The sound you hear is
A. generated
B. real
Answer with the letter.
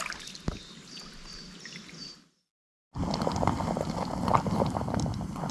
B